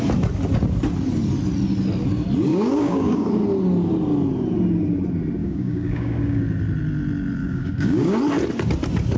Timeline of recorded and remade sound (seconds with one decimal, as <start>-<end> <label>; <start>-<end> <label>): 0.0-2.5 recorded; 2.5-3.3 remade; 3.3-5.4 recorded; 5.4-6.4 remade; 6.4-7.4 recorded; 7.4-8.2 remade; 8.2-9.2 recorded